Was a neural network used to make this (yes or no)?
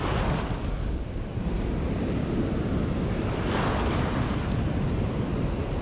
no